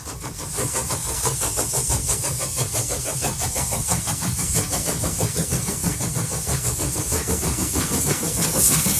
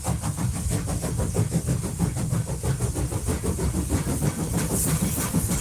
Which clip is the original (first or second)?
second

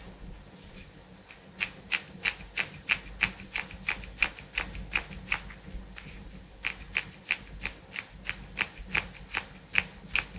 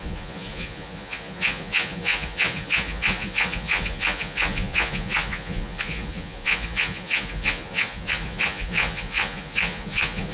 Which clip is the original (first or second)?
first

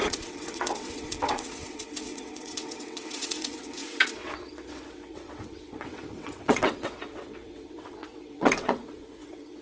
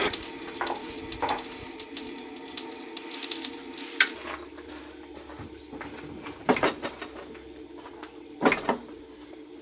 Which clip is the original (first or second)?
second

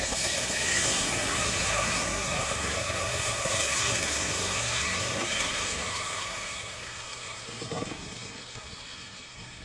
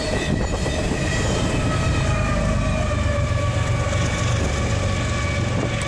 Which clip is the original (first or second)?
second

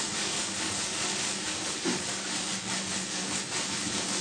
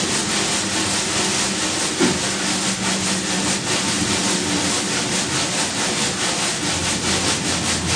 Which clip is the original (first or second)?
second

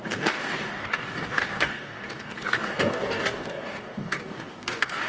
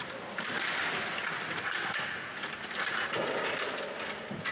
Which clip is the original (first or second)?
second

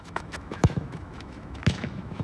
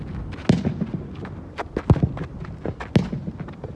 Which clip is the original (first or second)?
second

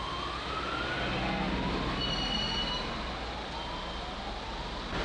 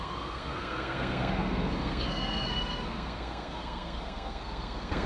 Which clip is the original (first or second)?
first